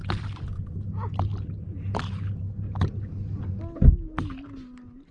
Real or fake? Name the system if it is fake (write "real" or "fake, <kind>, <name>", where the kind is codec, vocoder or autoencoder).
real